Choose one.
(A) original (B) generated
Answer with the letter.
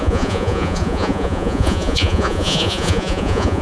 B